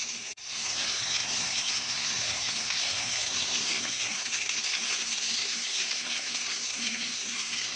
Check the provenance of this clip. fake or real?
fake